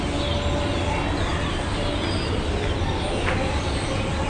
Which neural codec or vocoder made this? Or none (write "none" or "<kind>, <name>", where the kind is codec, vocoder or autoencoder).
none